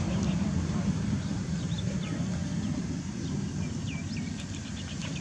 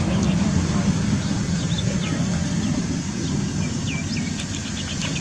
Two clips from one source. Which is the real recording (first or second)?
second